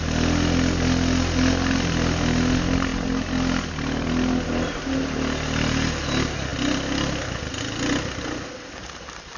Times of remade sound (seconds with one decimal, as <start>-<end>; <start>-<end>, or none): none